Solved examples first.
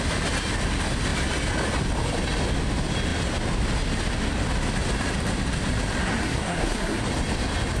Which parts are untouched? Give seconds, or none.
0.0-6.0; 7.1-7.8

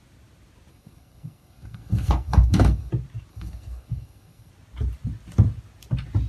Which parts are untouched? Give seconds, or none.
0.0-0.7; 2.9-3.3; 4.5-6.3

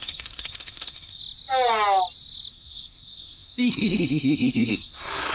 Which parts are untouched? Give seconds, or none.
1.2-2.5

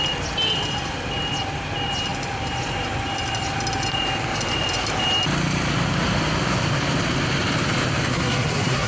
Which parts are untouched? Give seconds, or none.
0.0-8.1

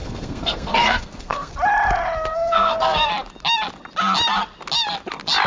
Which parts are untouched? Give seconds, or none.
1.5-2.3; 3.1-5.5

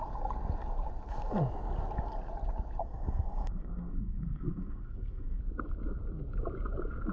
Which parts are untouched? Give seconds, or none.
0.0-2.8; 5.4-7.1

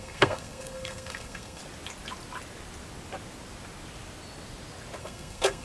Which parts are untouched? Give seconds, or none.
1.6-5.0

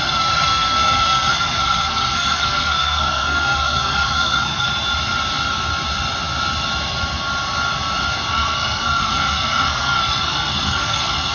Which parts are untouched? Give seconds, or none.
4.7-8.3